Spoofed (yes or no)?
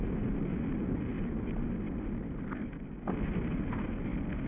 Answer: no